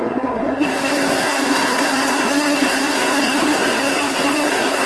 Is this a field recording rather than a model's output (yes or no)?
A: no